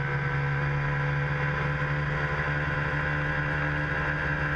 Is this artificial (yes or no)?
no